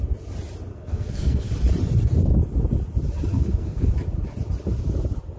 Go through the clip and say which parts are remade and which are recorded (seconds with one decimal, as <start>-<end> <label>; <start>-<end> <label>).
0.0-0.7 recorded; 0.7-1.5 remade; 1.5-3.3 recorded; 3.3-3.9 remade; 3.9-5.4 recorded